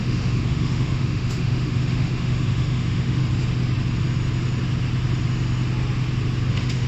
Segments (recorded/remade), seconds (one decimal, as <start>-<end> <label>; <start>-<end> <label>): 0.0-3.2 remade; 3.2-6.5 recorded; 6.5-6.9 remade